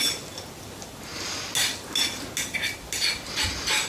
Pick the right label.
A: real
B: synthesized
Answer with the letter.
A